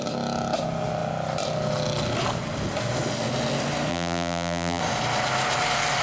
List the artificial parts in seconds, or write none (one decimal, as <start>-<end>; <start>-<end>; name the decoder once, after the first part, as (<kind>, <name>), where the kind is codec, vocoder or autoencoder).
3.9-4.8 (vocoder, BigVGAN v2)